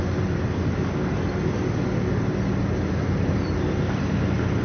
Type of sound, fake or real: real